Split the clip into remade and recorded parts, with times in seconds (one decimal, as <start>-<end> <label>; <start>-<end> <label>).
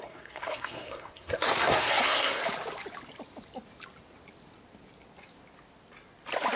0.0-2.4 remade; 2.4-6.6 recorded